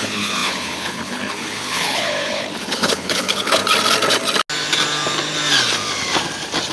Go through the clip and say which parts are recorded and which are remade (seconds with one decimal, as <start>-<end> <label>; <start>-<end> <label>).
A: 0.0-3.6 remade; 3.6-6.7 recorded